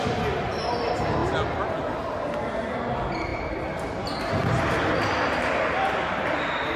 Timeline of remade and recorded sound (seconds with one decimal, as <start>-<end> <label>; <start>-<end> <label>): 0.0-6.8 recorded